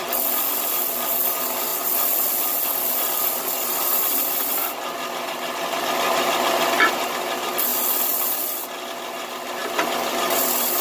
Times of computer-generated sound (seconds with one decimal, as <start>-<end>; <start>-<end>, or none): none